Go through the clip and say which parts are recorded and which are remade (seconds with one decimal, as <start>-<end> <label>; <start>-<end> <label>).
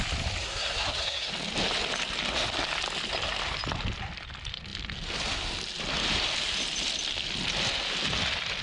0.0-0.4 recorded; 0.4-1.3 remade; 1.3-8.6 recorded